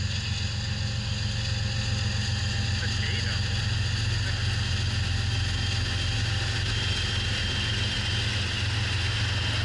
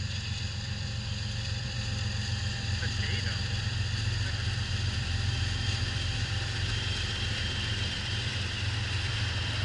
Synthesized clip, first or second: second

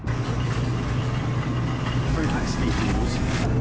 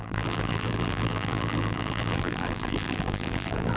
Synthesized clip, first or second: second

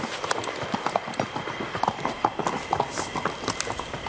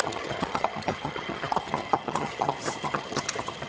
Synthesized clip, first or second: second